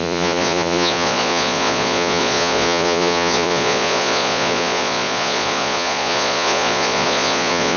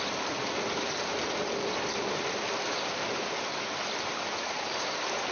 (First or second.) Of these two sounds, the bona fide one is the second